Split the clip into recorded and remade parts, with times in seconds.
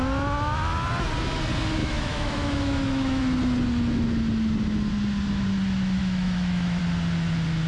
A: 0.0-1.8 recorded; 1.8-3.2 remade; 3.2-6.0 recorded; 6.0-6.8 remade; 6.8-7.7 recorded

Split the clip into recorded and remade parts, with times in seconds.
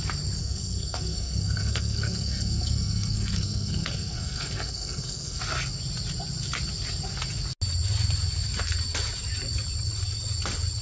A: 0.0-0.4 recorded; 0.4-5.4 remade; 5.4-10.8 recorded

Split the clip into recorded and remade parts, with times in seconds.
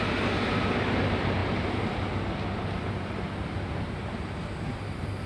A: 0.0-5.3 recorded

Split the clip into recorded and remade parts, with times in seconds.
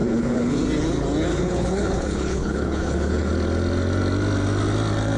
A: 0.0-0.6 remade; 0.6-1.3 recorded; 1.3-3.3 remade; 3.3-5.2 recorded